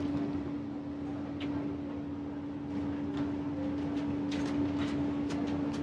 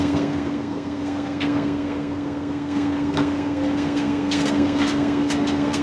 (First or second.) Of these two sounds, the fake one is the second